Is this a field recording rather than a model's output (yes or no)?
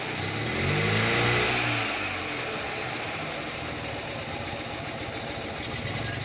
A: yes